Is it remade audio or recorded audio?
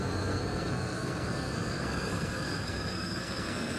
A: remade